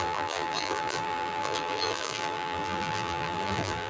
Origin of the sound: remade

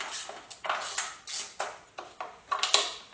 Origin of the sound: recorded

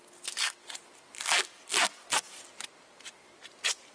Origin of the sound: recorded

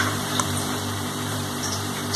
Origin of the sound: remade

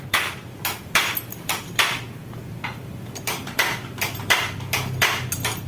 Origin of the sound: recorded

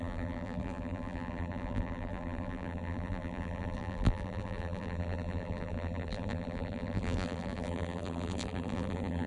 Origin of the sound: remade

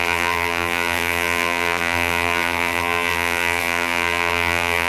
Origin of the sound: remade